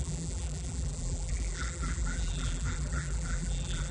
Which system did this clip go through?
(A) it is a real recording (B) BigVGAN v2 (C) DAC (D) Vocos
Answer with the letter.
B